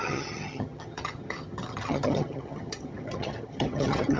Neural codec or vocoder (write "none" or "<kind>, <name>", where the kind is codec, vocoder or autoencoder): vocoder, HiFi-GAN